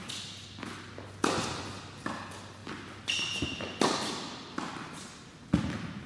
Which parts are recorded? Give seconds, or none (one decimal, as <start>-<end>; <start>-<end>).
0.0-6.1